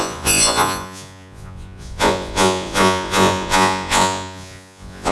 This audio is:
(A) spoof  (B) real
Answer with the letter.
A